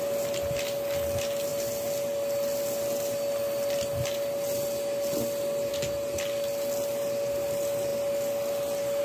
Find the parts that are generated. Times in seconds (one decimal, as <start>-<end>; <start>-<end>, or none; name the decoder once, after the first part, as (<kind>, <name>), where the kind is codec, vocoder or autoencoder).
none